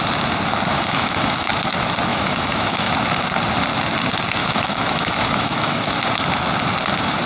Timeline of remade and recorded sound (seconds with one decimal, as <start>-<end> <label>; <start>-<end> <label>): 0.0-0.7 recorded; 0.7-1.5 remade; 1.5-2.1 recorded; 2.1-2.9 remade; 2.9-4.4 recorded; 4.4-5.9 remade; 5.9-7.3 recorded